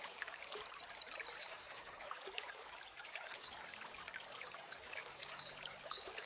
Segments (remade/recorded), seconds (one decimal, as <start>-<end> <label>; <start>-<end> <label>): 0.0-0.6 remade; 0.6-1.4 recorded; 1.4-6.3 remade